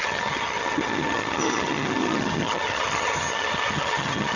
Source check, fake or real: fake